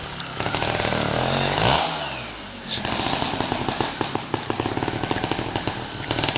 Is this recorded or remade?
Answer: recorded